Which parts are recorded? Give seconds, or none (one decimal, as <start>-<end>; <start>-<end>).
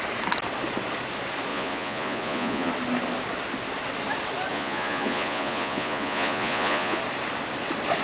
0.0-1.5; 2.7-4.5; 7.0-8.0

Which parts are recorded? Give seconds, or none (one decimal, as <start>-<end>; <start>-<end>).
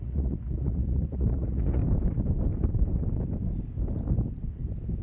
1.8-5.0